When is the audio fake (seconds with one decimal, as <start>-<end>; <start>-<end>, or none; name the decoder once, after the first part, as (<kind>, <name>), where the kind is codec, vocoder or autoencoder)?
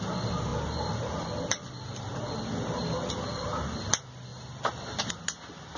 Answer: none